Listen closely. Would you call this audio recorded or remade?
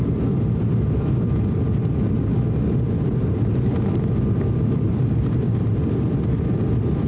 recorded